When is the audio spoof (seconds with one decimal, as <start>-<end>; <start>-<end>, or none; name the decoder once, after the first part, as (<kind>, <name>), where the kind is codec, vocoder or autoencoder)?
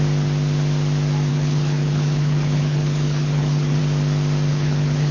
1.3-3.8 (codec, HILCodec); 4.5-5.1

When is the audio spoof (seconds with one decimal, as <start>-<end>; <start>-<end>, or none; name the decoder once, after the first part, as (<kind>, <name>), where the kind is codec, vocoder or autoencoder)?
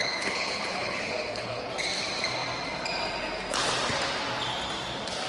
0.0-1.7 (codec, HILCodec)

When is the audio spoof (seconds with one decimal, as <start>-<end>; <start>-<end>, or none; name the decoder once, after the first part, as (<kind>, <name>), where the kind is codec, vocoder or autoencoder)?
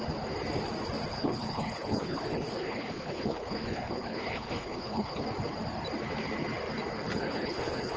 1.1-5.2 (codec, HILCodec); 7.1-8.0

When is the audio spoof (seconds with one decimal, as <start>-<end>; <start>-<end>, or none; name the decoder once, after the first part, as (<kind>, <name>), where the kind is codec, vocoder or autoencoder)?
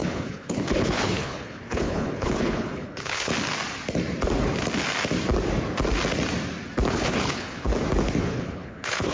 0.0-3.3 (codec, HILCodec); 6.9-7.7; 8.2-9.1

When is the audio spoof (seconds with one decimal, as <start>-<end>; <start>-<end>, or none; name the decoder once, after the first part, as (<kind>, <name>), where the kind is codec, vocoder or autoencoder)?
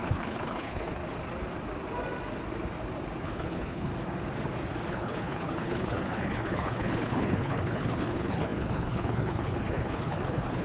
0.0-1.0 (codec, HILCodec); 3.2-3.9; 4.9-10.6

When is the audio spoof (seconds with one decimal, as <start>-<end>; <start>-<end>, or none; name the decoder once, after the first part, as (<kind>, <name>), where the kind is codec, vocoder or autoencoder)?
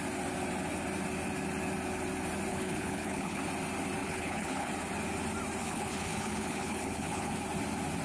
2.5-3.4 (codec, HILCodec); 4.0-4.7; 5.6-7.4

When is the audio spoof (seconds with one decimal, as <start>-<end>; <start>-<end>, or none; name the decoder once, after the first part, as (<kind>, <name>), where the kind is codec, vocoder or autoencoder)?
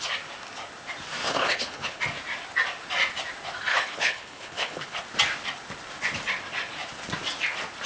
1.2-2.0 (codec, HILCodec); 3.7-5.0